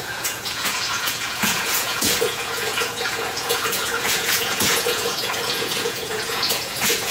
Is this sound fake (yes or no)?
yes